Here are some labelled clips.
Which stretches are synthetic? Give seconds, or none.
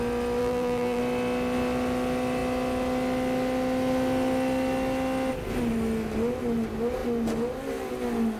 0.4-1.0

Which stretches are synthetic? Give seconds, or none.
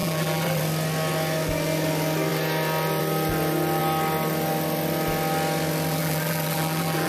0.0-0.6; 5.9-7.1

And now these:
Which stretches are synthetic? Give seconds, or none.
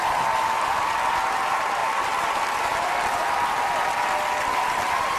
1.8-2.9